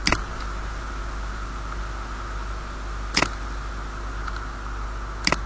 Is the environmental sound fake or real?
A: real